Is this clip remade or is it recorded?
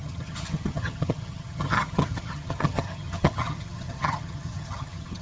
remade